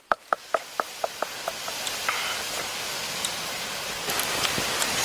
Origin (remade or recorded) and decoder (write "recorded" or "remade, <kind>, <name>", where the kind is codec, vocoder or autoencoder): recorded